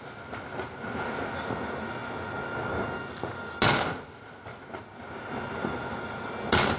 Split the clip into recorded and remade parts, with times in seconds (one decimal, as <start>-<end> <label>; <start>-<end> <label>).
0.0-6.8 recorded